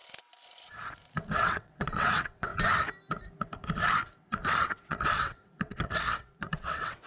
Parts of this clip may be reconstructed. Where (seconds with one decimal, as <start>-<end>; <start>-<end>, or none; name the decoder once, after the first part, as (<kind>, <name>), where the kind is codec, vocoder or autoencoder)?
1.4-2.5 (vocoder, WaveNeXt); 4.5-7.1